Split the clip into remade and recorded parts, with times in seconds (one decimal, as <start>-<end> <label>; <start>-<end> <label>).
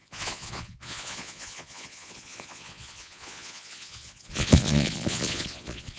0.0-6.0 remade